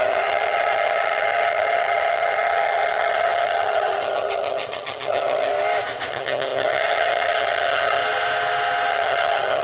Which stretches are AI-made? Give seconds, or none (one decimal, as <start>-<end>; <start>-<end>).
0.0-5.5; 6.1-8.0; 8.9-9.6